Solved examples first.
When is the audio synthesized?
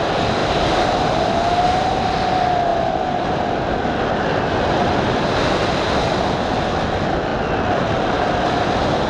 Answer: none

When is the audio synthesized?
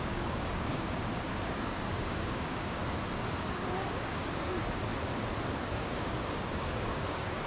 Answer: 0.0-2.8; 3.4-4.9; 5.6-7.5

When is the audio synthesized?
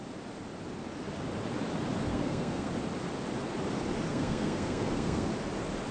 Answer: 2.1-2.7; 4.1-5.3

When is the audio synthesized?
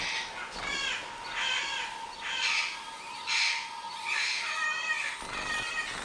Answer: none